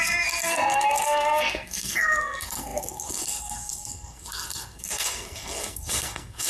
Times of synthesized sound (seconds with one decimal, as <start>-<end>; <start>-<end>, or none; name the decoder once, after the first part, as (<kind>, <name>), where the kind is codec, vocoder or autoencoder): 0.0-6.5 (codec, SNAC)